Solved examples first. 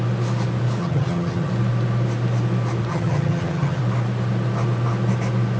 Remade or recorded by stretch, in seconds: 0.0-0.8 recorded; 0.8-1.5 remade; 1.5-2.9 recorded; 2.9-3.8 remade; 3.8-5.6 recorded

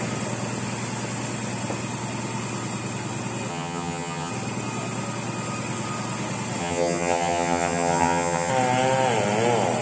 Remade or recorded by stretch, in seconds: 0.0-3.5 recorded; 3.5-4.3 remade; 4.3-6.6 recorded; 6.6-8.5 remade; 8.5-9.8 recorded